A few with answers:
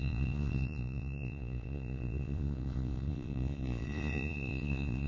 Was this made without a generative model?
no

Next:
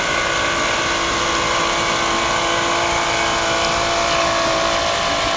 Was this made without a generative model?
yes